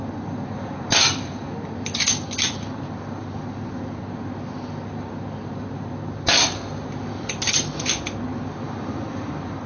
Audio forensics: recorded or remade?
recorded